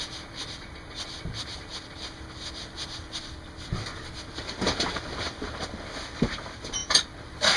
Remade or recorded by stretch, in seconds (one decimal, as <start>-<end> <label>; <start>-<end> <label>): 0.0-1.7 remade; 1.7-6.3 recorded; 6.3-7.6 remade